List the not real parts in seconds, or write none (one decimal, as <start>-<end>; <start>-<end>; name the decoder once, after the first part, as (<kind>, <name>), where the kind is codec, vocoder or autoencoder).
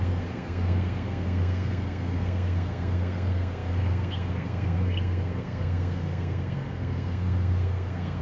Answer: 0.0-8.2 (codec, SNAC)